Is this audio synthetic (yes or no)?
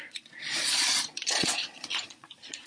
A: yes